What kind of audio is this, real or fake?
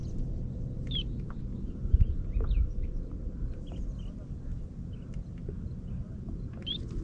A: real